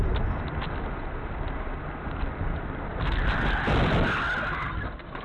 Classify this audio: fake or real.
real